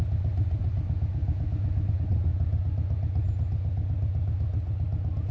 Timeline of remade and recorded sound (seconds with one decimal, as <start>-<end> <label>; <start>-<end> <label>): 0.0-5.3 recorded